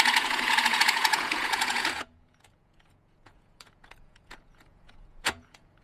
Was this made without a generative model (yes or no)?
no